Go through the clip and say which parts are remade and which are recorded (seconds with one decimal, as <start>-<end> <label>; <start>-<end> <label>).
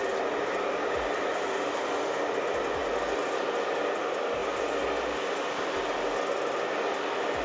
0.0-7.4 recorded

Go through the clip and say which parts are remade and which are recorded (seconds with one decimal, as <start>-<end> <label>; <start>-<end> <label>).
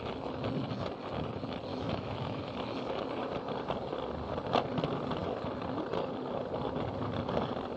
0.0-1.7 recorded; 1.7-2.5 remade; 2.5-7.8 recorded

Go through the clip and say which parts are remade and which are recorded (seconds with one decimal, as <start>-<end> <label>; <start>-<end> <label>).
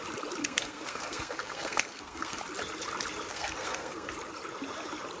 0.0-0.4 recorded; 0.4-2.4 remade; 2.4-3.3 recorded; 3.3-4.1 remade; 4.1-5.2 recorded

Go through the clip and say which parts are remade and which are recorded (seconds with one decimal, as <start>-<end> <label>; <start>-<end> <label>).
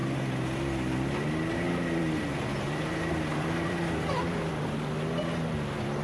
0.0-1.9 recorded; 1.9-6.0 remade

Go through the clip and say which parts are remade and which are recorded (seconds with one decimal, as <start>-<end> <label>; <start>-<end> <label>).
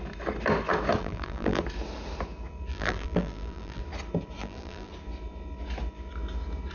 0.0-1.0 recorded; 1.0-1.6 remade; 1.6-2.7 recorded; 2.7-3.8 remade; 3.8-4.4 recorded; 4.4-4.9 remade; 4.9-6.7 recorded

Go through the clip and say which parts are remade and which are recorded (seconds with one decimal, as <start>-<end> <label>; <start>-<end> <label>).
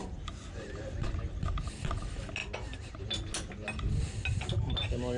0.0-0.8 remade; 0.8-5.2 recorded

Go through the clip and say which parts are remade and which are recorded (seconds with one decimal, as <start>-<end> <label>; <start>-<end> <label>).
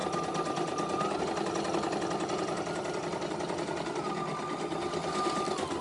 0.0-5.8 recorded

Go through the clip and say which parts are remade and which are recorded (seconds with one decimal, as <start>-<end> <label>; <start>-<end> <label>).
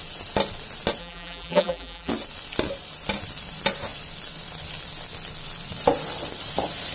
0.0-1.0 recorded; 1.0-2.1 remade; 2.1-6.9 recorded